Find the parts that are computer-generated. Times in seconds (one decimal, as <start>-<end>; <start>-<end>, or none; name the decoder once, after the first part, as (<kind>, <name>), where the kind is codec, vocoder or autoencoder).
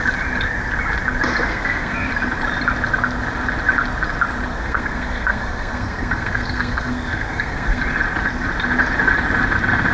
1.5-2.1 (codec, SNAC); 4.5-7.8